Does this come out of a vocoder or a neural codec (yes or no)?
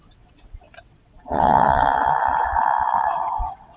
yes